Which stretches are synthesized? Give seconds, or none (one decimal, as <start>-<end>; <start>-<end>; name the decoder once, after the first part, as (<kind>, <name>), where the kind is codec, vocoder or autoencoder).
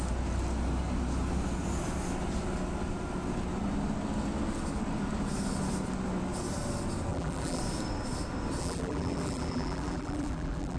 7.1-7.6 (vocoder, BigVGAN v2); 8.6-10.8